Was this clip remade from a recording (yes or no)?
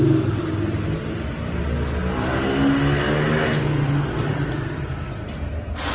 no